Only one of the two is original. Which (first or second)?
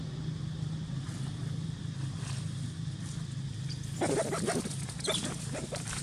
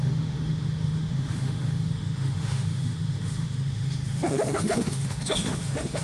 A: first